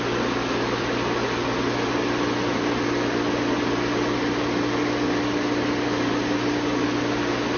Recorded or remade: recorded